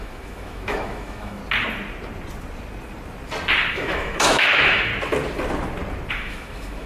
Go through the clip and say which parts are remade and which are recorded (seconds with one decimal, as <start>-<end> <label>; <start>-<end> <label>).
0.0-1.4 remade; 1.4-3.7 recorded; 3.7-4.9 remade; 4.9-6.1 recorded; 6.1-6.9 remade